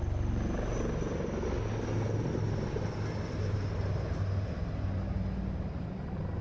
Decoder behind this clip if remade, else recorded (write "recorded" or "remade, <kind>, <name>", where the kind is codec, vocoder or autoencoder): recorded